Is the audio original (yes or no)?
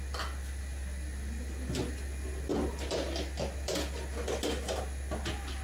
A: yes